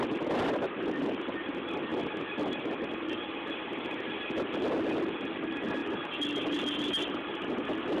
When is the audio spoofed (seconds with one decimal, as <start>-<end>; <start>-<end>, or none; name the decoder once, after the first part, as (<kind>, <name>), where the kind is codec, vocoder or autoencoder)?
none